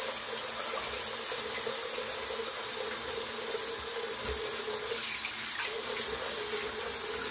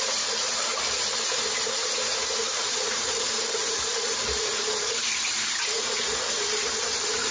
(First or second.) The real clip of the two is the first